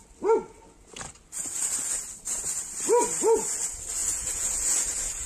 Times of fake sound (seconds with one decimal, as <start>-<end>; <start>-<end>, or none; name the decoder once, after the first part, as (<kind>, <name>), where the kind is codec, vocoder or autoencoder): 4.0-5.3 (vocoder, Vocos)

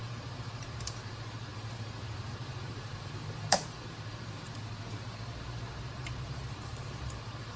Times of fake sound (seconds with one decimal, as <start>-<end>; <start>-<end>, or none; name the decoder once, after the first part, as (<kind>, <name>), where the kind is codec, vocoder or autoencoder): 0.0-7.6 (vocoder, BigVGAN v2)